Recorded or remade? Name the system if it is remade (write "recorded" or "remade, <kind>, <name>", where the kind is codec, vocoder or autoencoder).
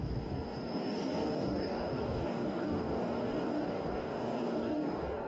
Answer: remade, codec, DAC